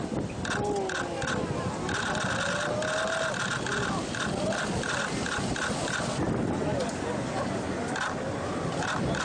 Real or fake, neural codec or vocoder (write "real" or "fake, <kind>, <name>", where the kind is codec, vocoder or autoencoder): real